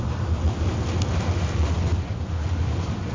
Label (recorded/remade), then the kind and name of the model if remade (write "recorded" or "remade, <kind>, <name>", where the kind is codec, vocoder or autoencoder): recorded